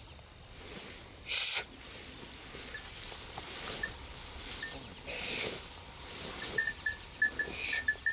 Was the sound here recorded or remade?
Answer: recorded